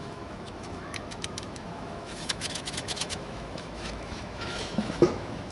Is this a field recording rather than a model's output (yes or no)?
no